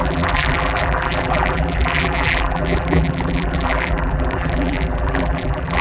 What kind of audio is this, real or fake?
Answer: fake